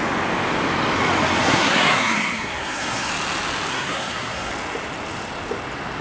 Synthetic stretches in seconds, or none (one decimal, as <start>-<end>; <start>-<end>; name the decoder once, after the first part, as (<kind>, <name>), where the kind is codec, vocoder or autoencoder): 1.4-3.1 (codec, SNAC); 3.7-4.5